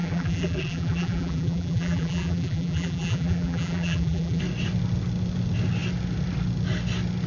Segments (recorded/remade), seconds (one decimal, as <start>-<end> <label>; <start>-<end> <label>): 0.0-4.4 remade; 4.4-7.3 recorded